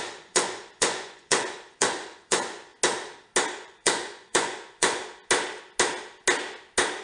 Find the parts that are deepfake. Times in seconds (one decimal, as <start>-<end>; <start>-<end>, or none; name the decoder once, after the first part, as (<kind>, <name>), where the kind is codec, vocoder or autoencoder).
0.0-2.7 (vocoder, Vocos); 3.5-5.0